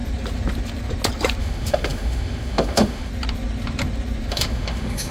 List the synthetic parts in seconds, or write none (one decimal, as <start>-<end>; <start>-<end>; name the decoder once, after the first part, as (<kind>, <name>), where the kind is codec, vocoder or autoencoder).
1.4-3.1 (autoencoder, DAC-VAE); 4.3-5.1